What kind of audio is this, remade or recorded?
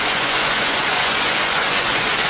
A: remade